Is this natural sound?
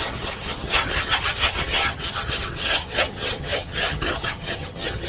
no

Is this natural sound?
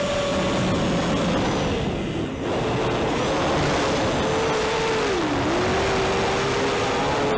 yes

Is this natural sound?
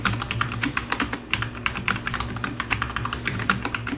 yes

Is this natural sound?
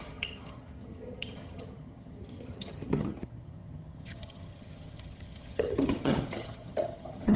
no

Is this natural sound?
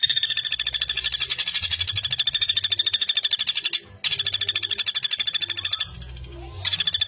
yes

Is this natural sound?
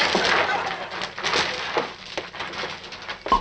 yes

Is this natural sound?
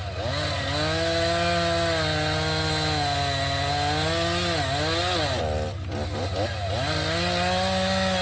yes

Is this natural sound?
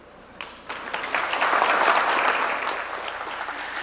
yes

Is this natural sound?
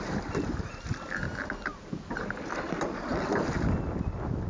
yes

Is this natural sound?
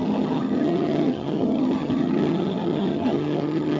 no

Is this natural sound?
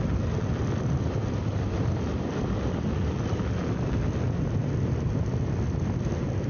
yes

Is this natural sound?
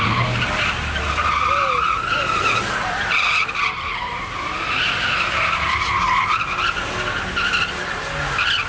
yes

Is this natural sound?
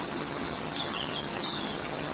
no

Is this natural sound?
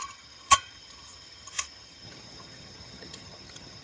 no